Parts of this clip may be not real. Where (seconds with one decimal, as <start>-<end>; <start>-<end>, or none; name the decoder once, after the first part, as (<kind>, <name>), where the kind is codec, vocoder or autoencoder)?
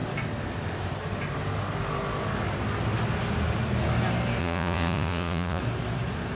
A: 4.4-5.6 (vocoder, Vocos)